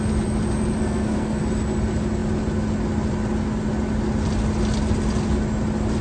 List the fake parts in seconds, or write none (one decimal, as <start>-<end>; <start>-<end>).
0.8-1.4